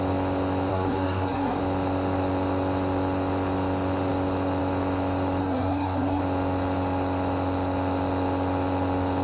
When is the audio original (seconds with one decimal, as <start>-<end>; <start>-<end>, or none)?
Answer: 0.0-0.7; 1.6-5.4; 6.2-9.2